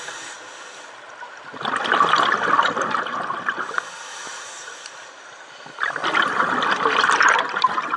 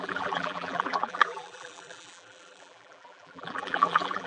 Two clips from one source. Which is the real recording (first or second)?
first